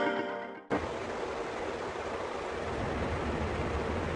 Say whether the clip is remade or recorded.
recorded